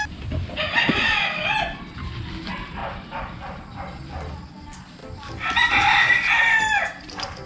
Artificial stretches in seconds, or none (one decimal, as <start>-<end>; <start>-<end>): none